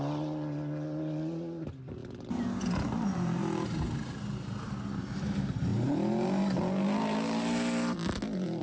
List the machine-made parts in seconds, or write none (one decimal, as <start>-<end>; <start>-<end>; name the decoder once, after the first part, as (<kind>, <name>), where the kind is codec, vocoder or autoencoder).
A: none